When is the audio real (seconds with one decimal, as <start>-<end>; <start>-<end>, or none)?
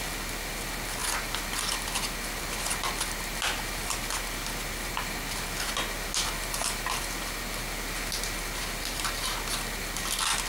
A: 0.0-10.5